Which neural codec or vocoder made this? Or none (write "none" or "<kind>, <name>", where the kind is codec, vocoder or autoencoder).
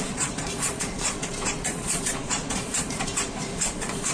vocoder, Vocos